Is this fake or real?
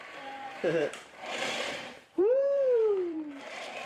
fake